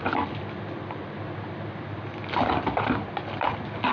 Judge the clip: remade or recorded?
recorded